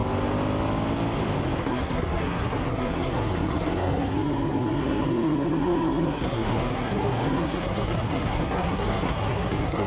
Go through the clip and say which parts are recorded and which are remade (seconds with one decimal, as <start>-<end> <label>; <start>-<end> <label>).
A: 0.0-1.6 recorded; 1.6-9.9 remade